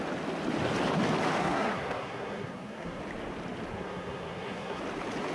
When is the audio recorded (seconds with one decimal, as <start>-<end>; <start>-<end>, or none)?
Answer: 0.0-1.4; 3.0-3.7; 4.8-5.3